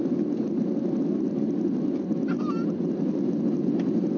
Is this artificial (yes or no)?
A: no